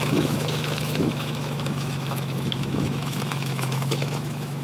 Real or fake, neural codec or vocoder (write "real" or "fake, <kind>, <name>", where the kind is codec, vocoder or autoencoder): fake, autoencoder, DAC-VAE